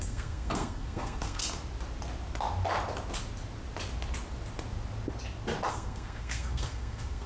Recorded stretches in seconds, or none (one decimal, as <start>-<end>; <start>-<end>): 1.4-5.7